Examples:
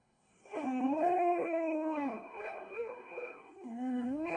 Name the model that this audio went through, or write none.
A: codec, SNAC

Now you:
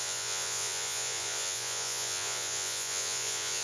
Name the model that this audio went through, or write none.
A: vocoder, Vocos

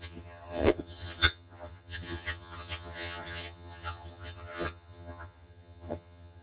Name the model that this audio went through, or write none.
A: vocoder, HiFi-GAN